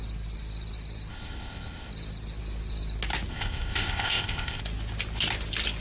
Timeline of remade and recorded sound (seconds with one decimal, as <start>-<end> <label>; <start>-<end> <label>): 0.0-1.1 recorded; 1.1-1.9 remade; 1.9-3.3 recorded; 3.3-4.6 remade; 4.6-5.8 recorded